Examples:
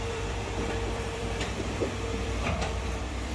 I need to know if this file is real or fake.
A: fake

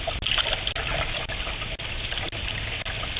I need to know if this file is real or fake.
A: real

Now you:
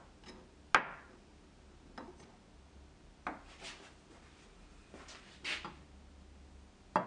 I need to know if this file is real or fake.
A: real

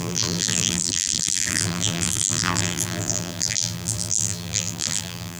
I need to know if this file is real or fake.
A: fake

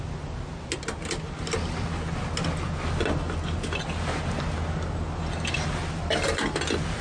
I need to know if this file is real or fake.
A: real